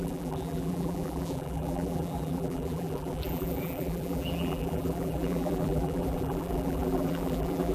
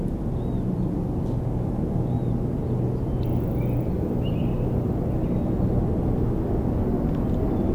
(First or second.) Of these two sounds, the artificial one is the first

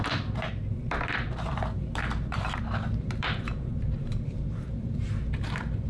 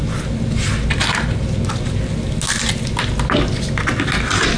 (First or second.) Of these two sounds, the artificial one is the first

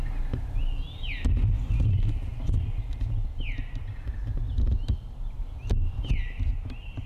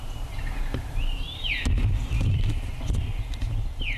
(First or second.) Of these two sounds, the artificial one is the second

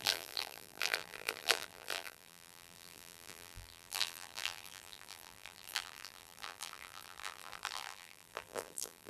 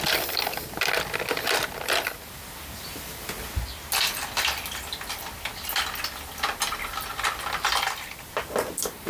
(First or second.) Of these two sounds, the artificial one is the first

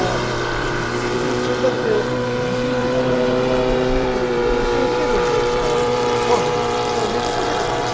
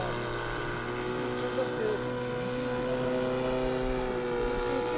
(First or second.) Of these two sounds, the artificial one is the first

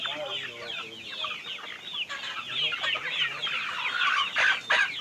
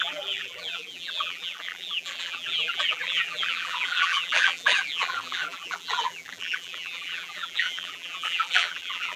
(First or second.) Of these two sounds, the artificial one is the second